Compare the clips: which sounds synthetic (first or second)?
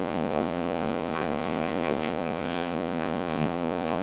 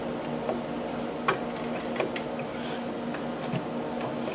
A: first